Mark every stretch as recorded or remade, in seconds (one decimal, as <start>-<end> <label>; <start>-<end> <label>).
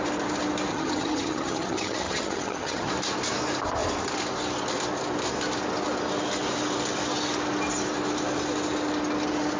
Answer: 0.0-0.7 recorded; 0.7-2.9 remade; 2.9-9.6 recorded